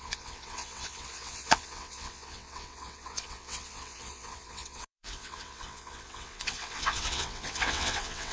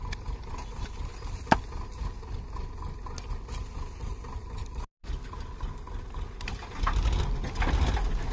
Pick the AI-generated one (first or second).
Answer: first